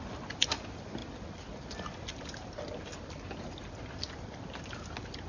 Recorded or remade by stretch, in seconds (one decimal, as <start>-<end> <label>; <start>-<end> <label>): 0.0-5.3 recorded